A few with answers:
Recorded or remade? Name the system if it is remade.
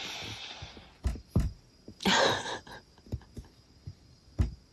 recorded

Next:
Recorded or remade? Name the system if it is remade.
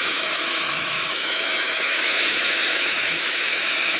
remade, autoencoder, DAC-VAE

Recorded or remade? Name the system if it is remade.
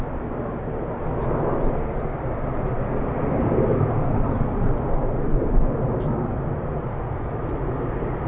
recorded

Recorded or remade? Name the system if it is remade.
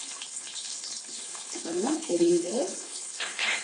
remade, codec, HILCodec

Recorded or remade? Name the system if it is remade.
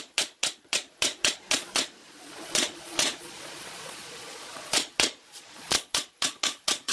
remade, vocoder, Vocos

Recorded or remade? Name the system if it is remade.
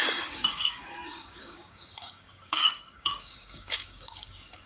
remade, codec, DAC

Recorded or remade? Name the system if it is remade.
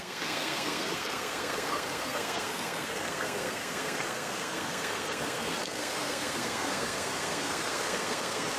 remade, codec, SNAC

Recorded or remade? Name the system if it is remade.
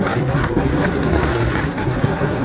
remade, codec, SNAC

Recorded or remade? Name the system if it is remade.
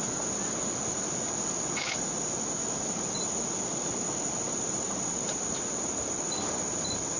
recorded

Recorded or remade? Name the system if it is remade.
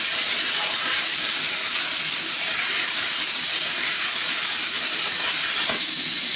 remade, vocoder, BigVGAN v2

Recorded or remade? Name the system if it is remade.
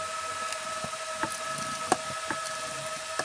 recorded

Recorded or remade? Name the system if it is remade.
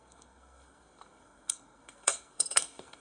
remade, codec, SNAC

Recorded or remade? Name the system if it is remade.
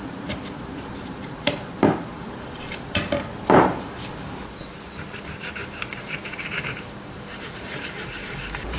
remade, vocoder, BigVGAN v2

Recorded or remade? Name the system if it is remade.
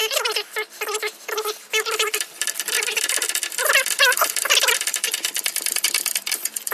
recorded